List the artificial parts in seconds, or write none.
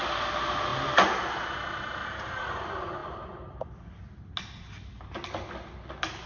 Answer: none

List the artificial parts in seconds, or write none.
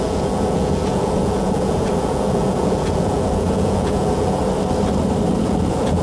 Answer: 0.0-4.4 (vocoder, Vocos); 5.3-6.0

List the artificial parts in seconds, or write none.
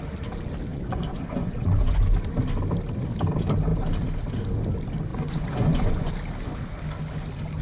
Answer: 0.7-2.0 (vocoder, Vocos); 5.1-6.1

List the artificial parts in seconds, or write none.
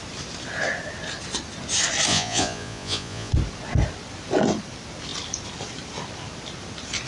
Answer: 2.1-3.3 (vocoder, Vocos)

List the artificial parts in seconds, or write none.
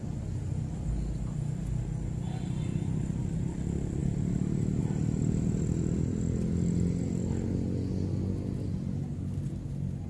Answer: none